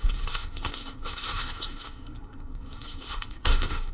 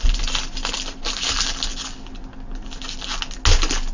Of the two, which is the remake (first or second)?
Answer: first